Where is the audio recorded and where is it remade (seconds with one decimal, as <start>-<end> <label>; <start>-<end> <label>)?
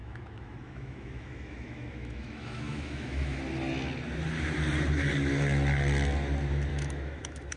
0.0-3.4 remade; 3.4-6.7 recorded; 6.7-7.6 remade